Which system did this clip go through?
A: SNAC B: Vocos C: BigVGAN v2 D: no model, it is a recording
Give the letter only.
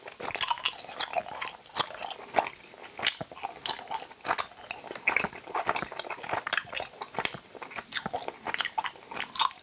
D